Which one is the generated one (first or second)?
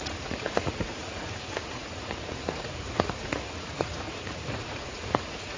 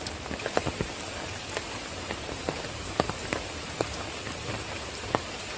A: first